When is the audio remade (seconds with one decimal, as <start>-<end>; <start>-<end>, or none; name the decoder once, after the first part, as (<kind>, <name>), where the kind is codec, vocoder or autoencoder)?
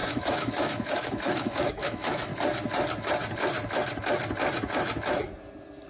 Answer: 0.0-2.3 (autoencoder, DAC-VAE)